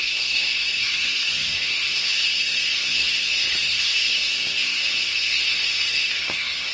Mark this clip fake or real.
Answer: fake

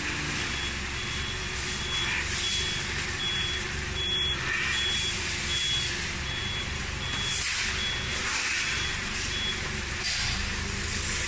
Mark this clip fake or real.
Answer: real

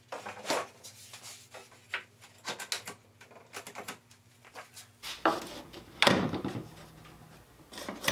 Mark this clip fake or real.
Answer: real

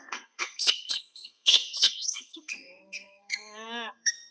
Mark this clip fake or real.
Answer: fake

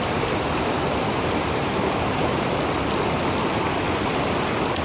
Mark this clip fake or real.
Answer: real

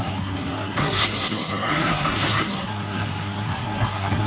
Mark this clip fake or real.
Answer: fake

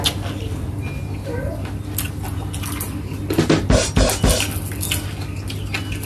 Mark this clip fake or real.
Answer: real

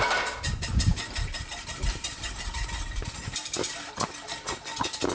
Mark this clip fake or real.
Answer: real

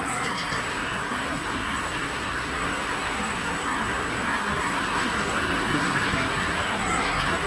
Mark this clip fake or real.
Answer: fake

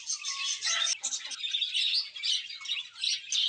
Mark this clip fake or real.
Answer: real